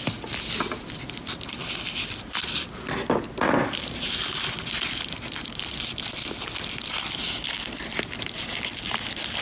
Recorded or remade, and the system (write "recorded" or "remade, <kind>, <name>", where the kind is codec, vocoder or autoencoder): recorded